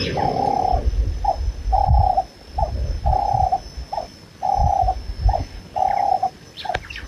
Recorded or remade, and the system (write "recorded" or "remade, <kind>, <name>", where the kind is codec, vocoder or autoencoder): recorded